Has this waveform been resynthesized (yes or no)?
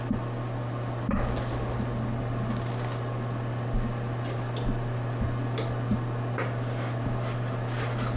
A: no